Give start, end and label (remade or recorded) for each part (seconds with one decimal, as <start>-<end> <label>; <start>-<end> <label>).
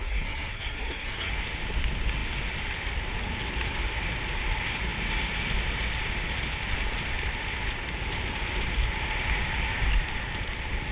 0.0-1.3 remade; 1.3-10.9 recorded